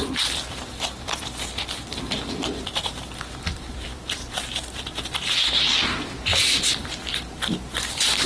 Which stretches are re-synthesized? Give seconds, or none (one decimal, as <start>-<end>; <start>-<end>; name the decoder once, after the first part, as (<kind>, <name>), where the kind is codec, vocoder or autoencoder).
0.0-6.3 (vocoder, BigVGAN v2); 7.1-8.3